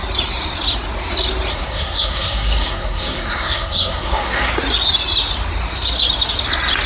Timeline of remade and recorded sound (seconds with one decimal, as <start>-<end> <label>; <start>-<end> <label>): 0.0-1.5 recorded; 1.5-4.5 remade; 4.5-6.9 recorded